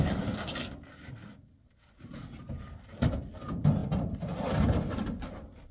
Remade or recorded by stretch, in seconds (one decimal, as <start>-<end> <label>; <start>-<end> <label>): 0.0-5.7 recorded